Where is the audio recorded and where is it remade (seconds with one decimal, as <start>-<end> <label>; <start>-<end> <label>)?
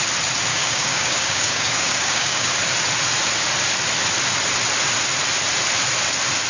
0.0-0.5 recorded; 0.5-2.6 remade; 2.6-6.5 recorded